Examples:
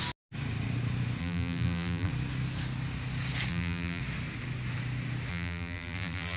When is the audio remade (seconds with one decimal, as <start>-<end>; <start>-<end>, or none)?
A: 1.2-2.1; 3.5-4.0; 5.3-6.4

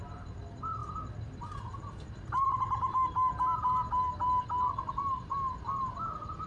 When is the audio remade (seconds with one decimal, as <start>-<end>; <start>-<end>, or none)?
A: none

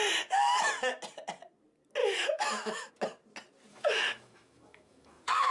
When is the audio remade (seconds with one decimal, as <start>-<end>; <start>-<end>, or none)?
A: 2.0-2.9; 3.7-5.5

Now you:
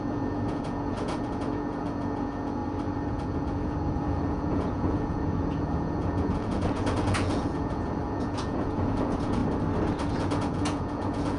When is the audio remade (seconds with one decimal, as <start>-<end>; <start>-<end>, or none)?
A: 0.0-2.6; 3.1-9.4; 10.1-11.4

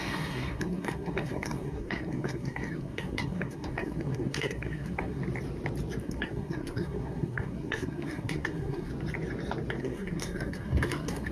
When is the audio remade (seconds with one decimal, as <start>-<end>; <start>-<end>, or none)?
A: 0.0-5.2; 6.0-8.9; 9.8-11.3

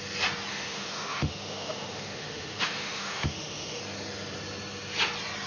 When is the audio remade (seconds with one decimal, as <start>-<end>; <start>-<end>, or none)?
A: 0.5-3.8

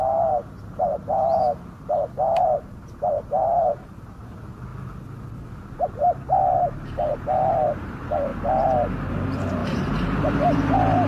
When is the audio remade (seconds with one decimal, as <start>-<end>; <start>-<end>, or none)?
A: 0.0-1.4; 2.4-4.7; 5.6-8.3; 9.1-11.1

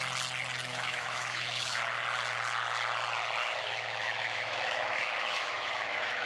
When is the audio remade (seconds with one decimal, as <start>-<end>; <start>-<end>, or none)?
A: 0.7-1.8; 3.4-6.3